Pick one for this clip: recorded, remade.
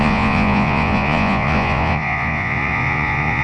remade